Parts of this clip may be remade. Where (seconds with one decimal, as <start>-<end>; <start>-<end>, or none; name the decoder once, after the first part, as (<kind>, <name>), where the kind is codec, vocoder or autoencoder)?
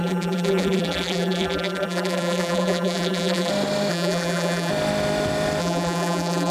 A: 0.0-3.5 (vocoder, BigVGAN v2); 3.9-4.7; 5.6-6.5